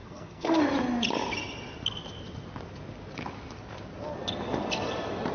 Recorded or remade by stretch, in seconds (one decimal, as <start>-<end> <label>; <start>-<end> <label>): 0.0-0.6 remade; 0.6-5.3 recorded